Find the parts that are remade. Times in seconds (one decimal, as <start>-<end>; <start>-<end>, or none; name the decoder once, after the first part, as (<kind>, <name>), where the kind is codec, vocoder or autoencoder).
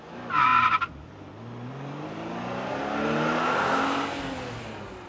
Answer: none